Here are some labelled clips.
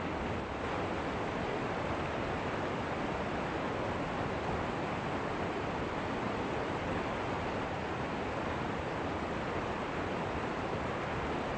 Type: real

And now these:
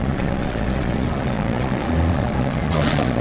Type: fake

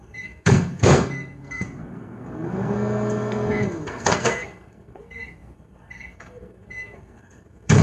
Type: fake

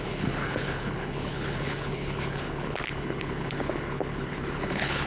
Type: fake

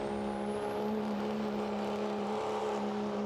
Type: fake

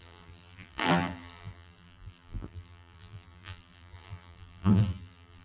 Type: fake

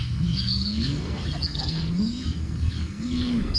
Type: fake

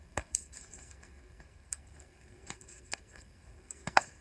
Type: fake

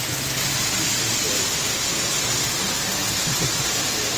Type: real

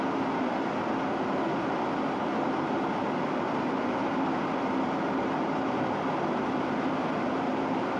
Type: real